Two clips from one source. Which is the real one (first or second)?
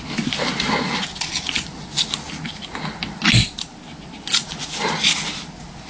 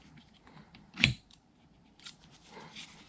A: first